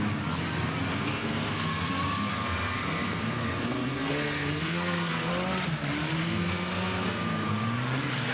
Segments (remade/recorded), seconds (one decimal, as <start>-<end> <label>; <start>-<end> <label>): 0.0-0.9 recorded; 0.9-1.9 remade; 1.9-2.3 recorded; 2.3-5.3 remade; 5.3-6.2 recorded; 6.2-7.6 remade; 7.6-8.3 recorded